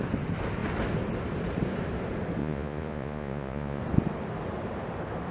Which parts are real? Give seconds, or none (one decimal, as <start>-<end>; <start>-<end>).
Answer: 0.0-2.4; 3.8-5.3